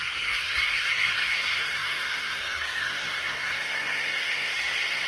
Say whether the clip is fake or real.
fake